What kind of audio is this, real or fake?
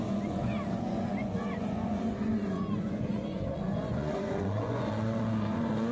fake